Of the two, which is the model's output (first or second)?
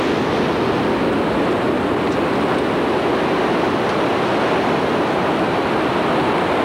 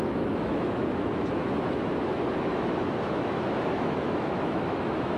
second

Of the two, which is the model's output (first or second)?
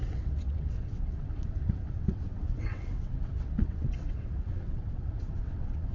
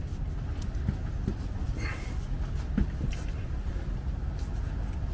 first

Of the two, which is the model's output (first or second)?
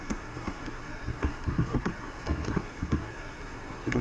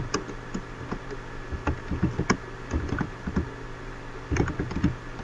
first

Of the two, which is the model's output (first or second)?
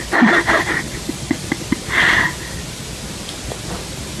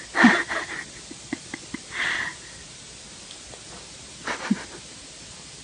first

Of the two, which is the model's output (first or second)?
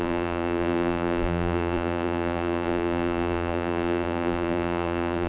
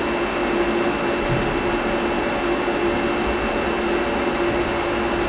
first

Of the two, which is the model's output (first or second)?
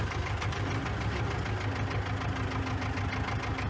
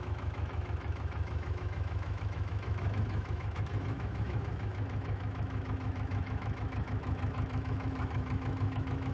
second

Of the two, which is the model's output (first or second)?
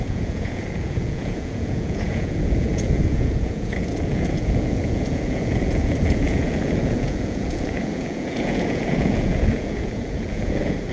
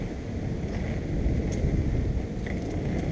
first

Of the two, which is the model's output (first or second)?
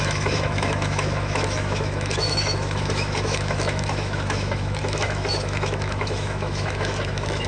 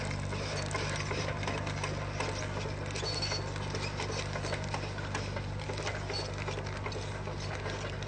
first